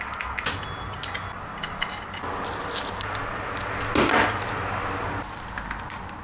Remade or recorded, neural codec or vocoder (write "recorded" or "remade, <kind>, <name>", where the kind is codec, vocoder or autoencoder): recorded